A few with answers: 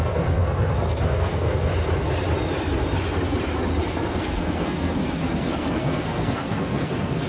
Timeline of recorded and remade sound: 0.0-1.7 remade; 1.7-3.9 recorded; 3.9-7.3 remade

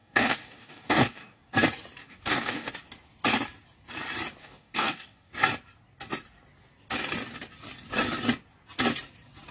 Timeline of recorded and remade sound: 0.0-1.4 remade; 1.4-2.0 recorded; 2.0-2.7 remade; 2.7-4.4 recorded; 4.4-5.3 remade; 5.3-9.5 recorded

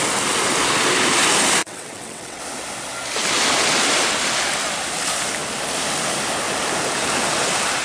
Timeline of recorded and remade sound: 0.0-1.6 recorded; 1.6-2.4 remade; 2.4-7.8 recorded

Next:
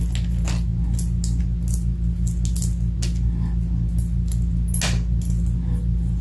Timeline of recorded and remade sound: 0.0-6.2 recorded